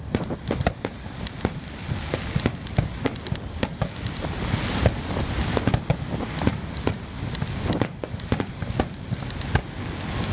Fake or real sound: real